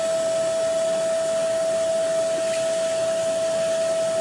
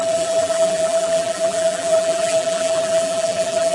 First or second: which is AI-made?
second